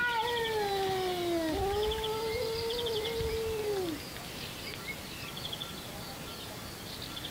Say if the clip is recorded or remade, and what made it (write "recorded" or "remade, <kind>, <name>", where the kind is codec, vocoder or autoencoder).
recorded